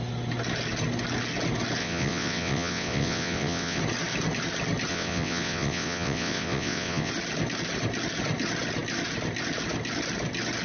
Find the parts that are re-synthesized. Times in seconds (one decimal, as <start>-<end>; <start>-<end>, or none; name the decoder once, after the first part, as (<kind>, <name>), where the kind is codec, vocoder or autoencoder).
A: 1.8-3.8 (vocoder, WaveNeXt); 4.9-7.1